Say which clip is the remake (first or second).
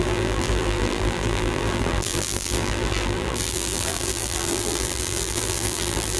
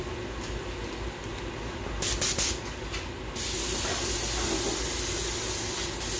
first